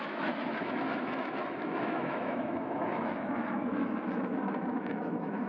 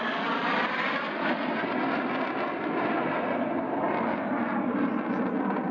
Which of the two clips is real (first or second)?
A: second